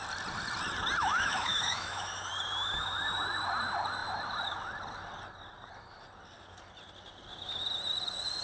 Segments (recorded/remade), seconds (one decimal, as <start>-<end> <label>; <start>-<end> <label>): 0.0-1.0 recorded; 1.0-2.3 remade; 2.3-8.4 recorded